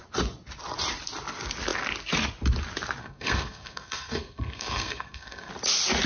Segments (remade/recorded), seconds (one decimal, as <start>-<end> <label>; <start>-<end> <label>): 0.0-3.0 recorded; 3.0-5.5 remade; 5.5-6.1 recorded